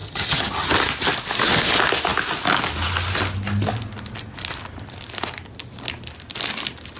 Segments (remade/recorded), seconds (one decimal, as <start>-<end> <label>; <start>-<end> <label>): 0.0-0.7 remade; 0.7-7.0 recorded